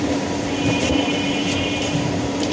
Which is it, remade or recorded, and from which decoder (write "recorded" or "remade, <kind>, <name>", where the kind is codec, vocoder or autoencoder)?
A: remade, vocoder, BigVGAN v2